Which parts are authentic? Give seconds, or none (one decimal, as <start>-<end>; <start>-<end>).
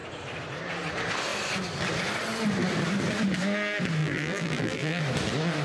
0.0-4.0; 5.0-5.6